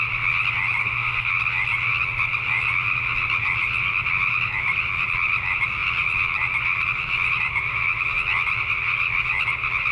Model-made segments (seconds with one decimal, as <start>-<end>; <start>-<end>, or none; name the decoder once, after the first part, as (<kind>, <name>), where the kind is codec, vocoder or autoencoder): 0.8-1.3 (codec, SNAC)